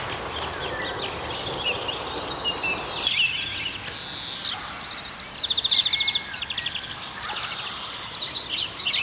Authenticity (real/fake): real